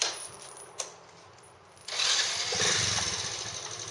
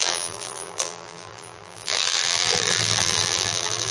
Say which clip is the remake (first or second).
second